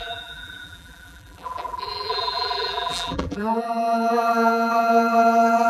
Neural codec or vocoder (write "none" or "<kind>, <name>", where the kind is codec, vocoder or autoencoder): vocoder, BigVGAN v2